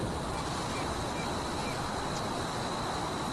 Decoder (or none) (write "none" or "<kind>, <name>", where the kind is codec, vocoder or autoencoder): none